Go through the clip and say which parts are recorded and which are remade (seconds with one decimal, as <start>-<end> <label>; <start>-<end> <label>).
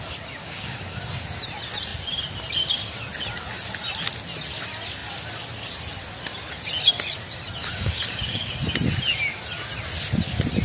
0.0-0.4 recorded; 0.4-1.0 remade; 1.0-7.6 recorded; 7.6-8.5 remade; 8.5-10.6 recorded